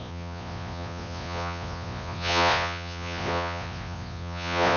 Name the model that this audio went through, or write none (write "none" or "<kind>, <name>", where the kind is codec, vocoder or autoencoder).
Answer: vocoder, Vocos